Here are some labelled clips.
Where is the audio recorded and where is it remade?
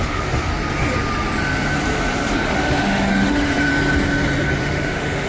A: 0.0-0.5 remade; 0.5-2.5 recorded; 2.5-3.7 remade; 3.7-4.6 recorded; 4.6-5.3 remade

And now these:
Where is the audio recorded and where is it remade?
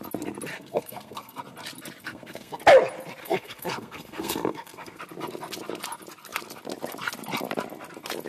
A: 0.0-0.5 recorded; 0.5-1.4 remade; 1.4-2.0 recorded; 2.0-2.6 remade; 2.6-3.2 recorded; 3.2-5.0 remade; 5.0-8.3 recorded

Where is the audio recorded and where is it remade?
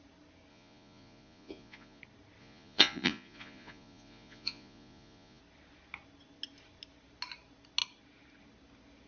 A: 0.0-0.5 recorded; 0.5-2.0 remade; 2.0-2.4 recorded; 2.4-5.4 remade; 5.4-9.1 recorded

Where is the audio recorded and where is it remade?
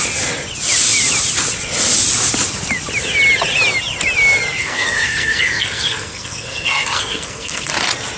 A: 0.0-4.6 recorded; 4.6-7.7 remade; 7.7-8.2 recorded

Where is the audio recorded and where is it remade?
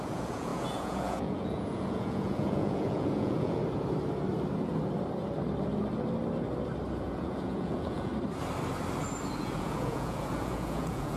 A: 0.0-3.6 remade; 3.6-7.0 recorded; 7.0-8.1 remade; 8.1-9.4 recorded; 9.4-11.2 remade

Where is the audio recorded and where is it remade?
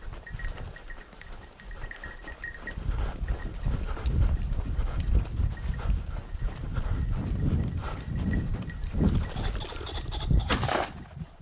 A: 0.0-6.7 remade; 6.7-7.6 recorded; 7.6-11.4 remade